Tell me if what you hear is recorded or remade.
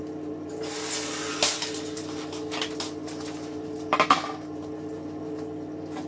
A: recorded